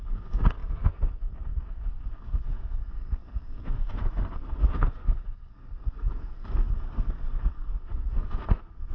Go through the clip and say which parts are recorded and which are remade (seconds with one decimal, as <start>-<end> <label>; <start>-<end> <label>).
0.0-8.9 remade